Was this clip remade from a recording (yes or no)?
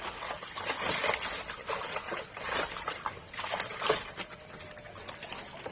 yes